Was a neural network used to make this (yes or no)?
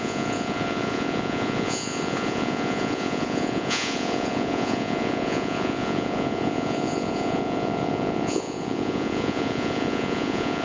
yes